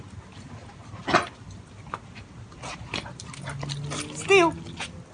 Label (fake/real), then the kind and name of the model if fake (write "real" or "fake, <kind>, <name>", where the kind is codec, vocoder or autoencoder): real